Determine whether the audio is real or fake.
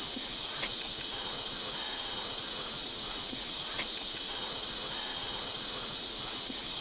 fake